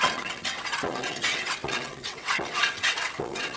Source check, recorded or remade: remade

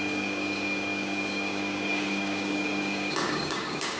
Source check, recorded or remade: remade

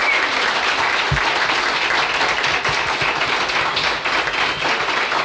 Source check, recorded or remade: recorded